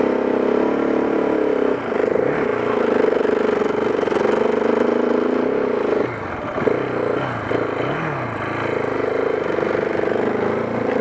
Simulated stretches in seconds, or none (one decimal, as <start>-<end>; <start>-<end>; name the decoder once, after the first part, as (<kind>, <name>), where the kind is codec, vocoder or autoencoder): none